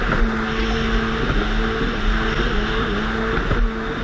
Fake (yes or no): no